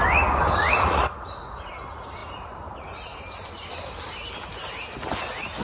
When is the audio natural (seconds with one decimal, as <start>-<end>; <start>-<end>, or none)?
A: 0.0-0.6; 1.7-5.6